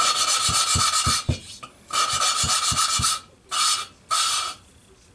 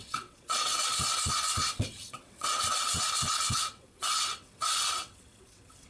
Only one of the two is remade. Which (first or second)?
second